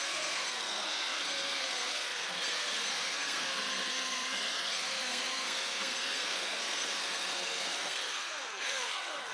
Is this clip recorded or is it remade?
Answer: remade